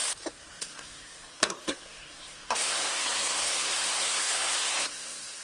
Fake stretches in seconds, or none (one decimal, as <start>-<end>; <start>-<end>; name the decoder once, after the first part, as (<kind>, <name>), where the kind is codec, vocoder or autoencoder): 0.6-5.4 (codec, SNAC)